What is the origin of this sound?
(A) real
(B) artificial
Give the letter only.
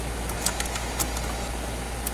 A